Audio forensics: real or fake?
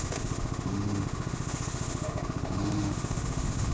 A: fake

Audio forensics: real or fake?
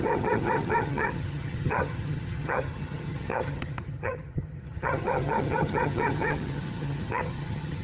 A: fake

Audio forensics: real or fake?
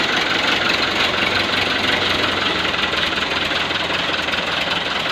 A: real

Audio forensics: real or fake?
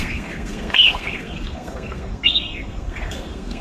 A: fake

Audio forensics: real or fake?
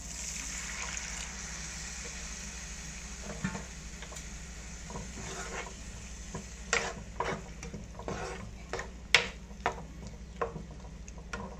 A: real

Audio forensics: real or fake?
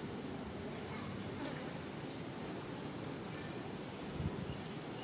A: real